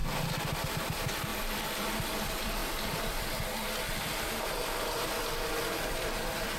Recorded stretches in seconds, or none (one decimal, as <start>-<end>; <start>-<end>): 0.0-0.7; 2.6-5.5